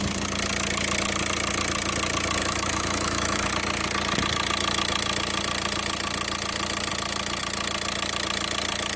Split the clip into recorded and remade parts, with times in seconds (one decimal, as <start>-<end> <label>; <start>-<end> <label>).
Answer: 0.0-2.4 recorded; 2.4-3.5 remade; 3.5-9.0 recorded